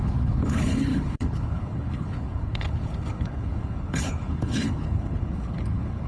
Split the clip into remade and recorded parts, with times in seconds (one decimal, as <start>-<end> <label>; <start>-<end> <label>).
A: 0.0-6.1 remade